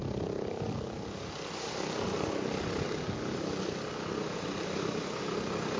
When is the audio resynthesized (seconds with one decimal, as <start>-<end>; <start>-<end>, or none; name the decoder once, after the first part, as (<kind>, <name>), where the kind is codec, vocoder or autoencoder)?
none